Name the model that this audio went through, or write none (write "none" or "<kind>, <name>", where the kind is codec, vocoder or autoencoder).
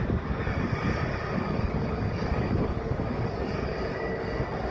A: codec, DAC